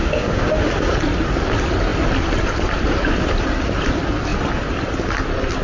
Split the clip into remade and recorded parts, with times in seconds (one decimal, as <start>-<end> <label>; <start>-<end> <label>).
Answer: 0.0-0.7 remade; 0.7-5.6 recorded